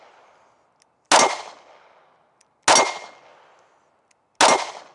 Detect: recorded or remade recorded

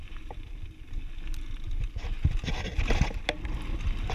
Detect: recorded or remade recorded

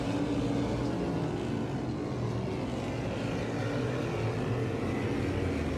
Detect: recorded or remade recorded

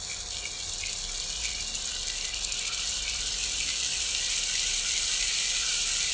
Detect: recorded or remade recorded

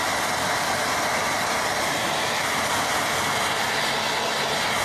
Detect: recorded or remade recorded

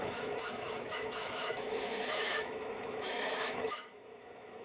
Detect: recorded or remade remade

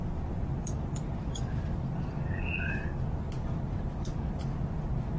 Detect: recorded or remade recorded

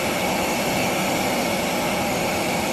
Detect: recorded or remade recorded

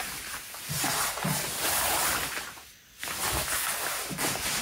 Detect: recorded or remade recorded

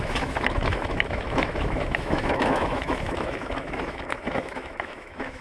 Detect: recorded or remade remade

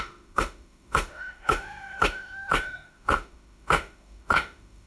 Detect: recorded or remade remade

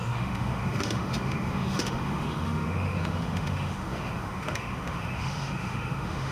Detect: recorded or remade remade